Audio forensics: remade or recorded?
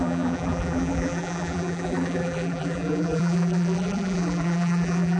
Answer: remade